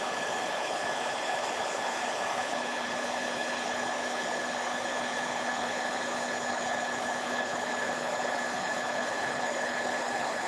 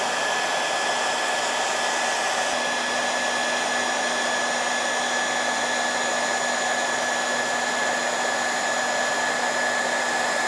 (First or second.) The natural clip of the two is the second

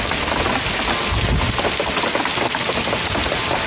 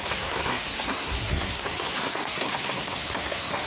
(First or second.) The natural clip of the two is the first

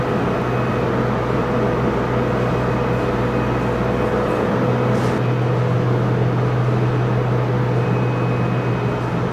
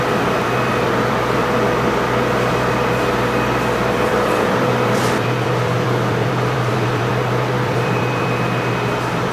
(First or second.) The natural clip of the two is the first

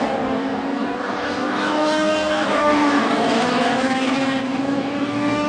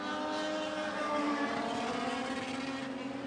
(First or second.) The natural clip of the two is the second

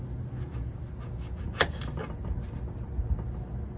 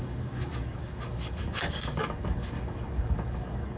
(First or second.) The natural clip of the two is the first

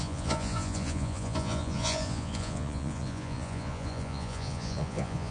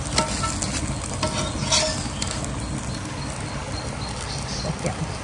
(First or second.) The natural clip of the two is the second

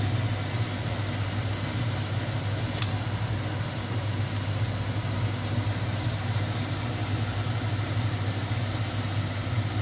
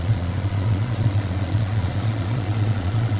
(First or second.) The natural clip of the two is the first